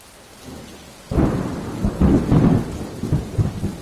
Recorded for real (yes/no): yes